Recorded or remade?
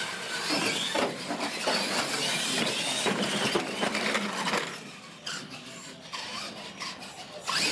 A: recorded